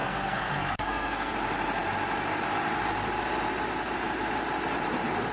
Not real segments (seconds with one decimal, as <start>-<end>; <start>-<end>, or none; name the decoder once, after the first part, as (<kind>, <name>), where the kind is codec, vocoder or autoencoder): 0.0-1.3 (codec, SNAC)